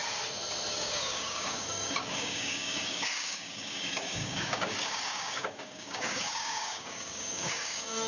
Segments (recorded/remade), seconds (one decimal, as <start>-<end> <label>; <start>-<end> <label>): 0.0-0.7 recorded; 0.7-8.1 remade